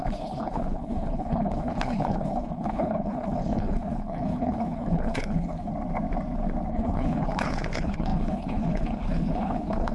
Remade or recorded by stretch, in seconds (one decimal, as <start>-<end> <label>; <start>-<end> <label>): 0.0-5.7 remade; 5.7-6.7 recorded; 6.7-9.9 remade